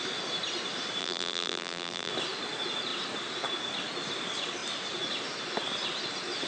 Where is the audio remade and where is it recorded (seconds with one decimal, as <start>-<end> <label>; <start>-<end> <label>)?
0.0-1.0 recorded; 1.0-2.1 remade; 2.1-6.5 recorded